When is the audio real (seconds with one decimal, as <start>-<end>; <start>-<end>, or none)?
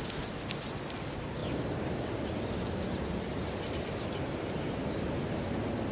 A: 0.0-5.9